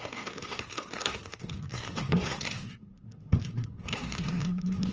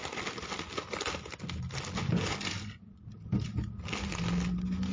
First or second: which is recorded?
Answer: second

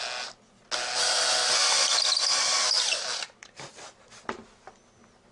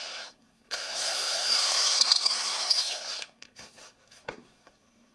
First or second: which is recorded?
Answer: first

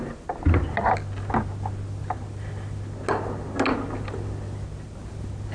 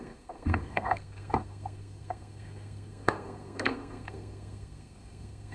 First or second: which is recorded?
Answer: first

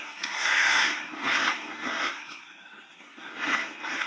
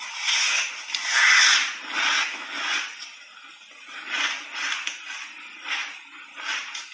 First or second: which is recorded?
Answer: second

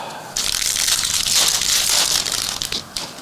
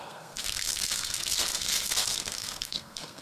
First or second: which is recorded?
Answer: first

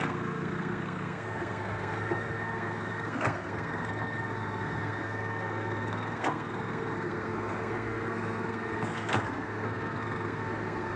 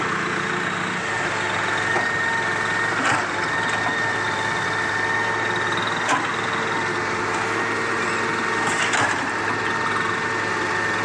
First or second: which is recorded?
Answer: second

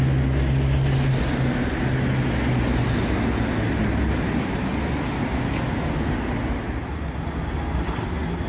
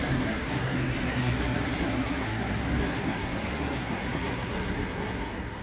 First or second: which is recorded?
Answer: first